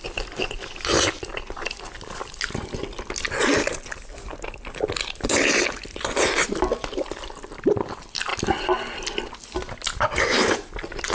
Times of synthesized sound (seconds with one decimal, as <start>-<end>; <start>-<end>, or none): none